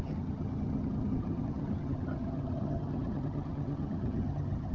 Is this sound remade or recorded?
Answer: remade